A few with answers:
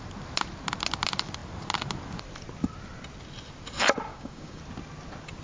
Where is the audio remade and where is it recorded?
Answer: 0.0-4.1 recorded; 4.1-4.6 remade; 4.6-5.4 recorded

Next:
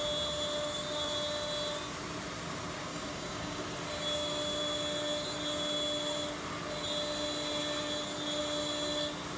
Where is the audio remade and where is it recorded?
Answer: 0.0-2.9 recorded; 2.9-3.6 remade; 3.6-9.4 recorded